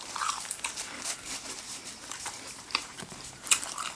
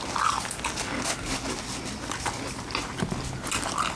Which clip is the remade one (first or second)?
first